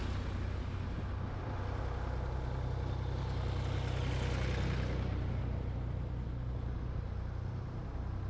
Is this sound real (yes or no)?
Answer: yes